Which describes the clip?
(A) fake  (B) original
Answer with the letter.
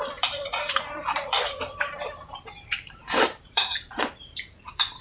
A